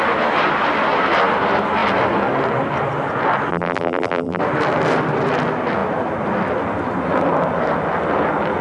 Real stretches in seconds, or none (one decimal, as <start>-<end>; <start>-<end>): 0.0-3.5; 4.4-8.6